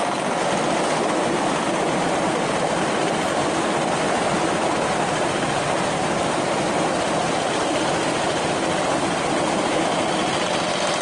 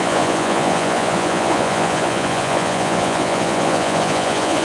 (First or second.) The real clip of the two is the first